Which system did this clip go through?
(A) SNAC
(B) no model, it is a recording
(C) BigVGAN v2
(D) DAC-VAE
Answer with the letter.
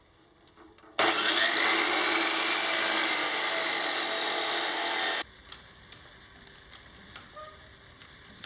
B